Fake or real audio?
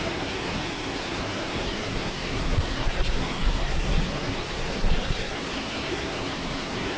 fake